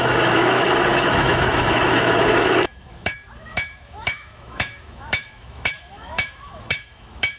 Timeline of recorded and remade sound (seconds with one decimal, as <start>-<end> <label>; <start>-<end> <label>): 0.0-7.4 remade